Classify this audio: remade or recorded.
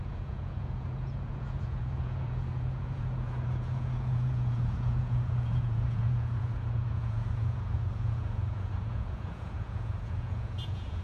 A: remade